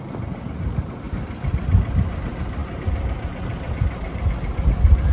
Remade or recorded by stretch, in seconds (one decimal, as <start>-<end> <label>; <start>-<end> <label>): 0.0-2.6 recorded; 2.6-4.3 remade; 4.3-5.1 recorded